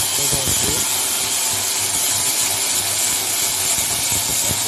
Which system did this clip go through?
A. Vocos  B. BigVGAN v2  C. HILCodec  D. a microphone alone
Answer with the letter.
D